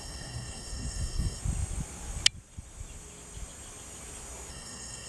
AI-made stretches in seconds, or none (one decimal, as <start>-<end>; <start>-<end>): 0.0-1.4; 4.5-5.1